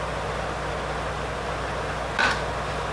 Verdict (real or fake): real